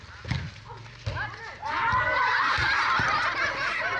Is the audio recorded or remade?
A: recorded